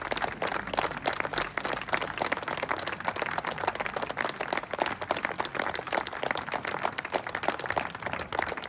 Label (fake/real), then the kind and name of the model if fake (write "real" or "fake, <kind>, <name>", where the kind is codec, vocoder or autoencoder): real